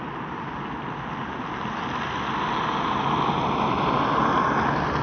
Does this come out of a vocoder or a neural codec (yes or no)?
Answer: no